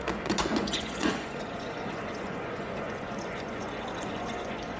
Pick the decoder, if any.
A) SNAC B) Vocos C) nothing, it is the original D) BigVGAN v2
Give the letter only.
B